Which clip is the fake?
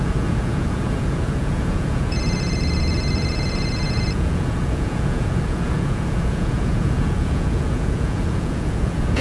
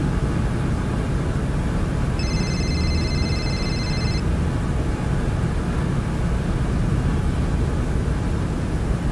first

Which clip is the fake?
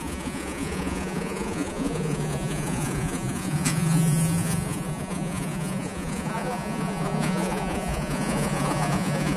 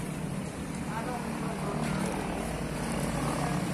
first